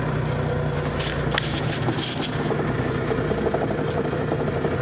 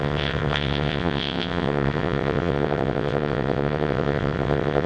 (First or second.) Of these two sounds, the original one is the first